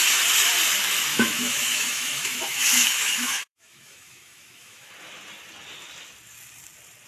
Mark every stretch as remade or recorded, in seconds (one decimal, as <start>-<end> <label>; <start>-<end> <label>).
0.0-1.1 recorded; 1.1-4.9 remade; 4.9-7.1 recorded